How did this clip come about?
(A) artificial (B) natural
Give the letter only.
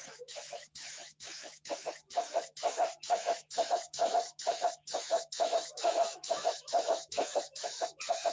A